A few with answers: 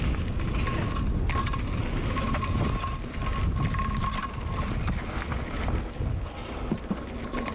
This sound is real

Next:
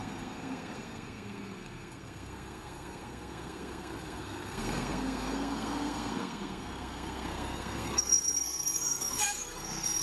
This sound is fake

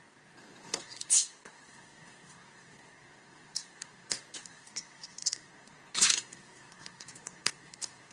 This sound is fake